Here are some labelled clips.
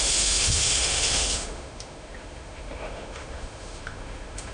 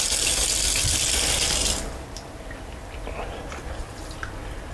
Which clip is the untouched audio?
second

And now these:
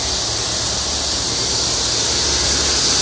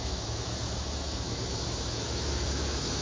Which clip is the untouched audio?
first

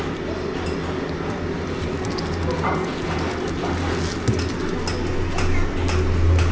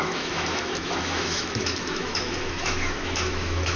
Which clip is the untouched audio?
first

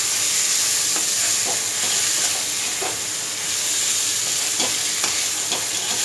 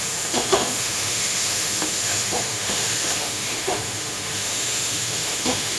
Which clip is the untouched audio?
first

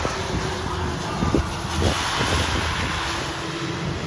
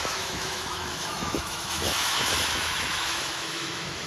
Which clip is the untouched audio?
first